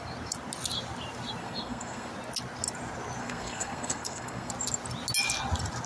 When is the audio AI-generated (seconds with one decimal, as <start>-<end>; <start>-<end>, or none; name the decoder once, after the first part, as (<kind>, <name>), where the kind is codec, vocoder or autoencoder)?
1.4-2.1 (codec, SNAC); 3.2-4.5